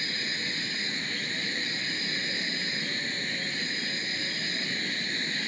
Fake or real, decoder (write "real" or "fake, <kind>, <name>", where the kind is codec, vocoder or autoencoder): real